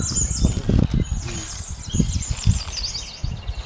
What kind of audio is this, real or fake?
real